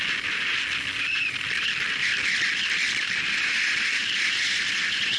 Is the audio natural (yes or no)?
yes